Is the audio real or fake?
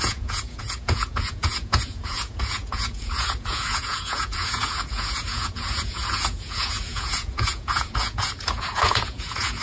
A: fake